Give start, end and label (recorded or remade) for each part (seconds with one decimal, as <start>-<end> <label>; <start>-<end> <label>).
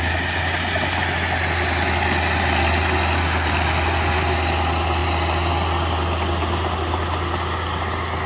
0.0-8.3 recorded